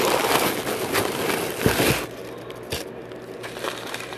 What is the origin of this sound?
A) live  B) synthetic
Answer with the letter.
A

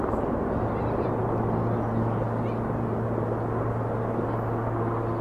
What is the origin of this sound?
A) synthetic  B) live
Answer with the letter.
B